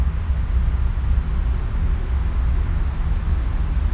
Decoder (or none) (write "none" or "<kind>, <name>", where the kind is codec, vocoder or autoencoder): none